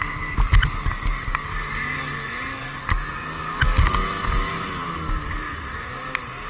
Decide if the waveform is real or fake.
real